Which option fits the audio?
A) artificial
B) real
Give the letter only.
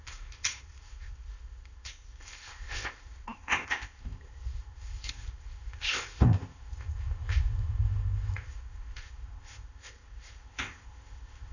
A